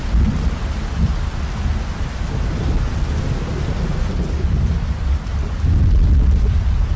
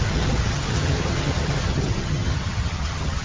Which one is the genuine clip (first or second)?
first